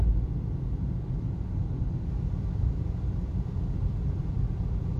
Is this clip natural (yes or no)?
no